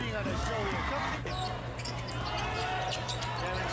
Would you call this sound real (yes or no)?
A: yes